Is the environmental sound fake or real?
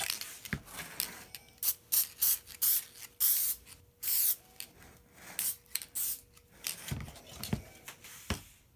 real